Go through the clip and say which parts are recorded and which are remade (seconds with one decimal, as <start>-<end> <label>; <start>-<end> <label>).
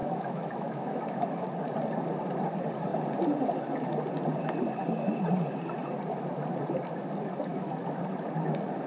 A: 0.0-1.4 remade; 1.4-7.5 recorded; 7.5-8.0 remade; 8.0-8.9 recorded